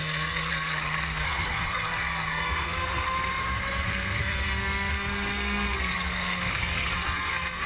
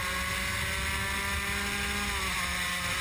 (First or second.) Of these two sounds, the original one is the second